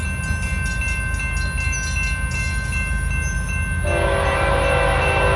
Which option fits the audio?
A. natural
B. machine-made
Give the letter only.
A